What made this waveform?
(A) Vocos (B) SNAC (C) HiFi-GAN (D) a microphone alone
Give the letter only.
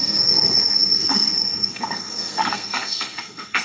B